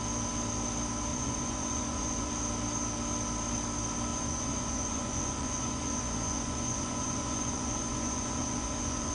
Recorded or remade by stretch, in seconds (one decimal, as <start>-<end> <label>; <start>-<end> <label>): 0.0-1.1 recorded; 1.1-2.3 remade; 2.3-4.1 recorded; 4.1-9.1 remade